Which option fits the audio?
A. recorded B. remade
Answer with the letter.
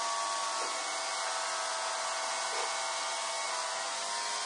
A